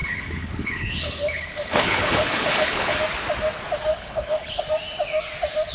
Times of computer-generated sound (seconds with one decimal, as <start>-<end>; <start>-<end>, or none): 0.0-3.0; 3.9-4.6